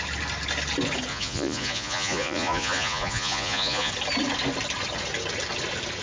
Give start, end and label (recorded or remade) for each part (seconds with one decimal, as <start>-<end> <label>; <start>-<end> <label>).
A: 0.0-1.1 recorded; 1.1-3.9 remade; 3.9-6.0 recorded